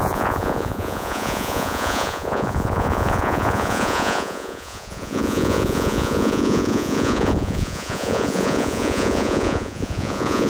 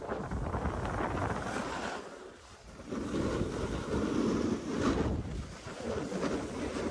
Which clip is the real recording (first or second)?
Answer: second